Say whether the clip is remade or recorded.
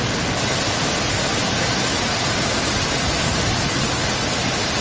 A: recorded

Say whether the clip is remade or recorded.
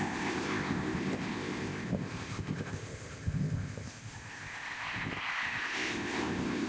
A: remade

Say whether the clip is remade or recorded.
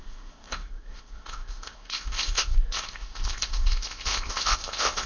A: remade